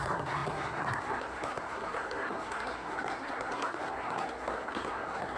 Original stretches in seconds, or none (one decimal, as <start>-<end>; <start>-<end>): none